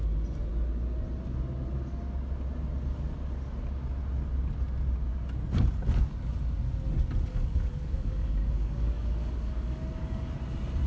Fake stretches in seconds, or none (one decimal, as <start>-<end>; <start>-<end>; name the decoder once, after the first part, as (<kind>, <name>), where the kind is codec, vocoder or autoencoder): 7.3-10.3 (codec, DAC)

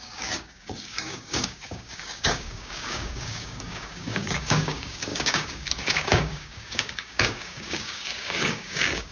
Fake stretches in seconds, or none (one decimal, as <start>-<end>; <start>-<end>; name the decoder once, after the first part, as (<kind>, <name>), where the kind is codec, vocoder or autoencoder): 0.0-9.1 (codec, DAC)

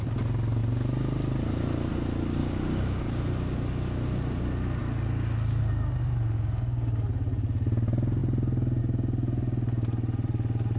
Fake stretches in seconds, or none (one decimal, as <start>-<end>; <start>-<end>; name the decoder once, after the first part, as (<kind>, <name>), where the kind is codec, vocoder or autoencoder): 2.4-3.2 (codec, DAC)

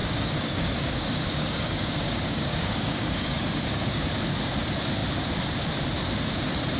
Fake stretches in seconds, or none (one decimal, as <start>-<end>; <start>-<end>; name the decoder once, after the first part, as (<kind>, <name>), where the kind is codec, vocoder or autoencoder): 0.0-4.1 (codec, DAC)